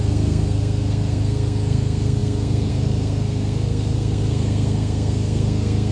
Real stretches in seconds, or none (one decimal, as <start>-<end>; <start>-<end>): none